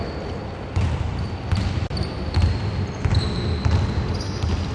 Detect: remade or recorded recorded